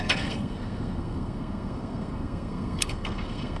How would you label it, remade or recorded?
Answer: remade